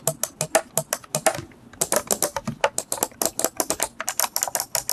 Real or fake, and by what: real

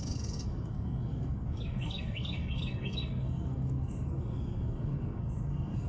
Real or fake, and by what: fake, codec, SNAC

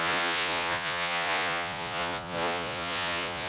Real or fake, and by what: fake, vocoder, Vocos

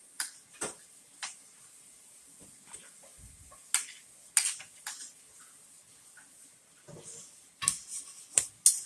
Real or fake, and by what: real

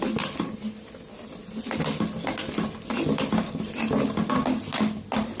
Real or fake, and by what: real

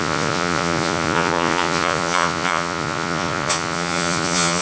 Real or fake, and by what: fake, vocoder, Vocos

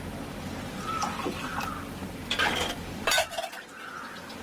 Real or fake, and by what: real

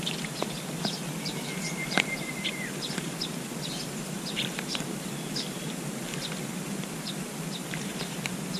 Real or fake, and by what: fake, vocoder, BigVGAN v2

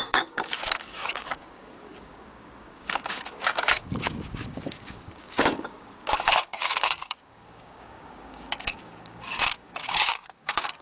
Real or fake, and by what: fake, codec, DAC